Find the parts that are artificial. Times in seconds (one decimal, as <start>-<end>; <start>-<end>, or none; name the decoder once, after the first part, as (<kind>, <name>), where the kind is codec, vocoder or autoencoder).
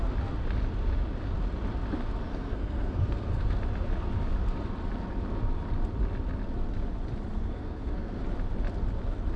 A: 2.3-3.6 (codec, SNAC); 7.3-8.2